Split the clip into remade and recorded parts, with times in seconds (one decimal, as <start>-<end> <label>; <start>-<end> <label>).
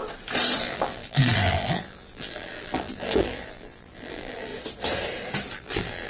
0.0-0.6 recorded; 0.6-4.5 remade; 4.5-5.5 recorded; 5.5-6.1 remade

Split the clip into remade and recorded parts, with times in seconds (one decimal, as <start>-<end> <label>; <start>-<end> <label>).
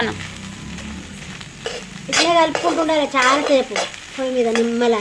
0.0-2.0 recorded; 2.0-5.0 remade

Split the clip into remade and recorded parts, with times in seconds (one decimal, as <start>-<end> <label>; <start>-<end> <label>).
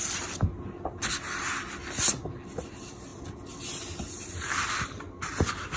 0.0-5.8 recorded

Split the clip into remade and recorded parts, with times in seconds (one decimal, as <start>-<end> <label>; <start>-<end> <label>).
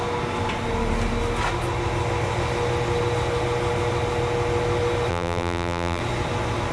0.0-5.1 recorded; 5.1-6.0 remade; 6.0-6.7 recorded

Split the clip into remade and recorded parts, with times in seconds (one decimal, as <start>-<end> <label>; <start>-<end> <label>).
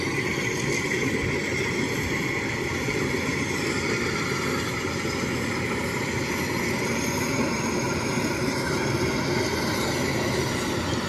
0.0-11.1 recorded